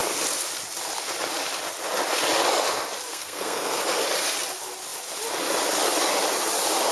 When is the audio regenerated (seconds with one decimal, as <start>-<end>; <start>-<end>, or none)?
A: 3.1-3.8